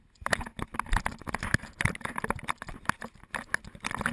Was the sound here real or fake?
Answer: real